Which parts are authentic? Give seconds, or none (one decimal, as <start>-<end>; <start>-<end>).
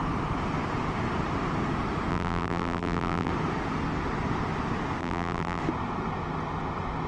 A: 0.0-2.1; 3.3-5.0; 5.6-7.1